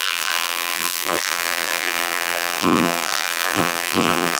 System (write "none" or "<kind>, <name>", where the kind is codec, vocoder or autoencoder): vocoder, BigVGAN v2